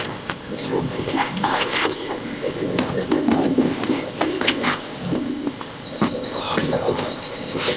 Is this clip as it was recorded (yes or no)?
no